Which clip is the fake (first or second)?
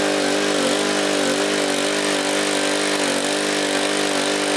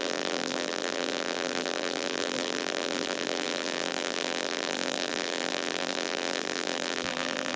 second